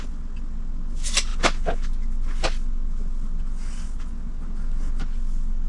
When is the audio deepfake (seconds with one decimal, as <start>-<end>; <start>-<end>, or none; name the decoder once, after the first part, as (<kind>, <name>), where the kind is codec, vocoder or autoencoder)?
none